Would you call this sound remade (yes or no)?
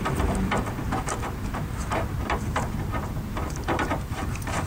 yes